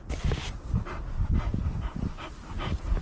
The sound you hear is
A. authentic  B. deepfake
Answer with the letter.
A